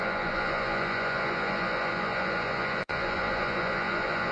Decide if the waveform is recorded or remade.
remade